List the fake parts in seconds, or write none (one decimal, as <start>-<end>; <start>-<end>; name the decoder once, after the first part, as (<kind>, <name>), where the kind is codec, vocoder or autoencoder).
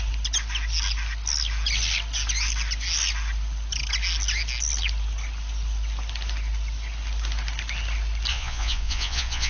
8.3-9.5 (vocoder, Vocos)